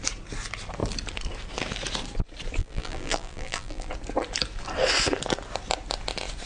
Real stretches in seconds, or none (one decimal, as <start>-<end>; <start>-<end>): 0.0-2.6; 3.9-6.5

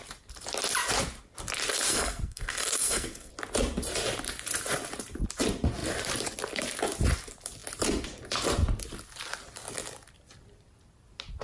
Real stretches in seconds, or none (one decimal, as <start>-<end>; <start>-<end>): 0.0-1.9; 3.3-11.4

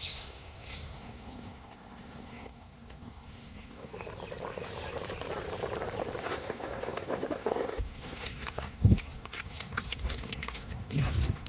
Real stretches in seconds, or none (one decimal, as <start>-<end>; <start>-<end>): 3.9-6.2

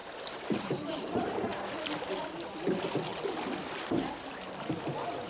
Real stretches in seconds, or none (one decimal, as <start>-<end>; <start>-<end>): 2.3-5.3